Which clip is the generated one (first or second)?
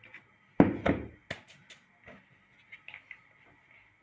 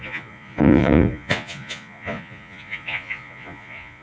second